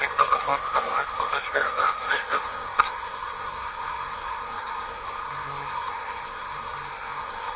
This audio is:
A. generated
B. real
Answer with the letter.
A